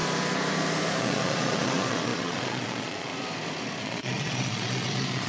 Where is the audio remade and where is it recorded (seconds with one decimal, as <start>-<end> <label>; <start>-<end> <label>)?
0.0-1.0 recorded; 1.0-3.1 remade; 3.1-3.8 recorded; 3.8-5.3 remade